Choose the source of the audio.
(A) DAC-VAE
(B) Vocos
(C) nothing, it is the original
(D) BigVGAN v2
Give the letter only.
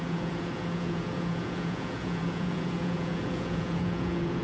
B